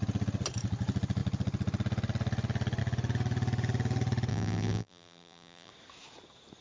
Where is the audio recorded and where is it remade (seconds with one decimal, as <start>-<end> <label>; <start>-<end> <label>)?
0.0-4.3 recorded; 4.3-5.7 remade; 5.7-6.6 recorded